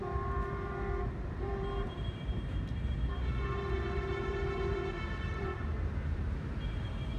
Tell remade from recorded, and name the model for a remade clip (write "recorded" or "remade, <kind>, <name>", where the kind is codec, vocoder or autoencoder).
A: remade, vocoder, BigVGAN v2